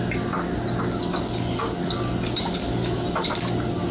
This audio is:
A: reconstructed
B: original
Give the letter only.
B